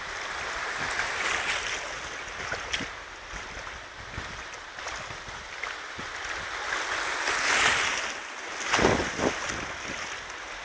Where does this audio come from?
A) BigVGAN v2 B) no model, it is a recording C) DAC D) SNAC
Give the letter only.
B